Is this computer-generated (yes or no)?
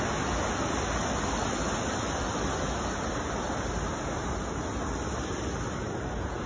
no